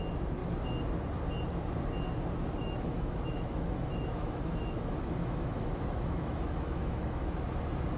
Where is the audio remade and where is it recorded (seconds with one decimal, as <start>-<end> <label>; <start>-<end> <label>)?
0.0-2.6 recorded; 2.6-7.4 remade; 7.4-8.0 recorded